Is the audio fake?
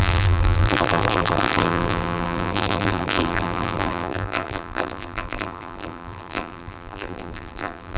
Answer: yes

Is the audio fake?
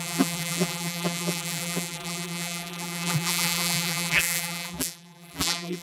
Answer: yes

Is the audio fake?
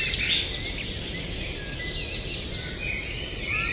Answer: no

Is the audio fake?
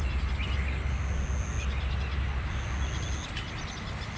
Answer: no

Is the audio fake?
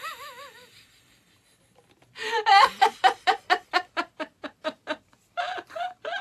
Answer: yes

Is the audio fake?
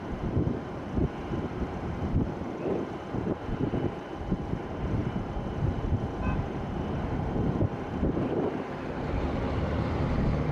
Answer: yes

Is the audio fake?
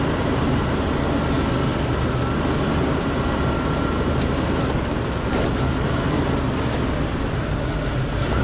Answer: no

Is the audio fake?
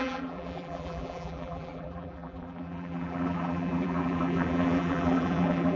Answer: yes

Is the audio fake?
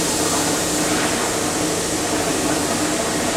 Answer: no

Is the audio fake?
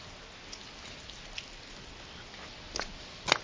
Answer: no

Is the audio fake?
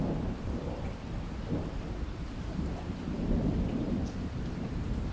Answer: yes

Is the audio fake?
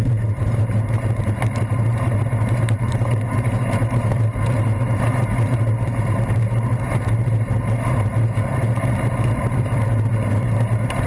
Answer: yes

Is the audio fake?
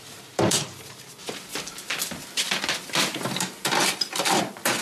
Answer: yes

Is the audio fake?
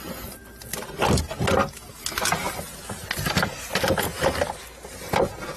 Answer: no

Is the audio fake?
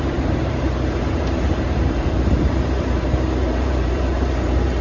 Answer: yes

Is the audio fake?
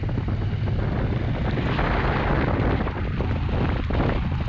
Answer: no